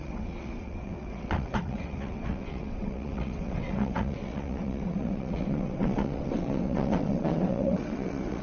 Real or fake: fake